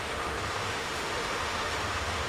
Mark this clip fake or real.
fake